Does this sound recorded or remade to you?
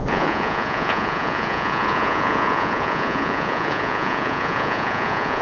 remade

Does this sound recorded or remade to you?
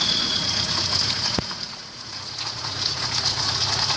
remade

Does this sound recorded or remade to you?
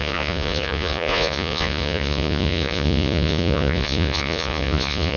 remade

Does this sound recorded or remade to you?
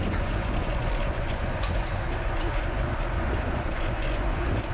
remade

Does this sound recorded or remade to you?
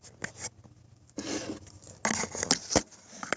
recorded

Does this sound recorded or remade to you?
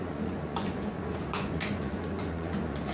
remade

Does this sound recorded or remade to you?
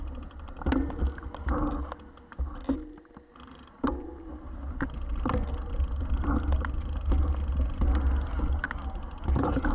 recorded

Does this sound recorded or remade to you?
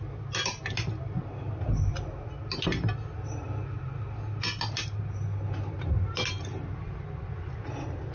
recorded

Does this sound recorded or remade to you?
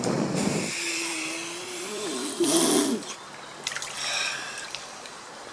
recorded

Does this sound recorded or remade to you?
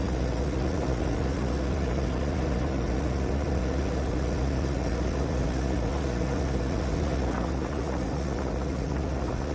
remade